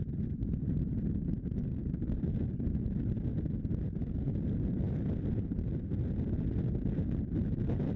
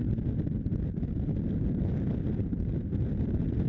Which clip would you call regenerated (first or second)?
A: second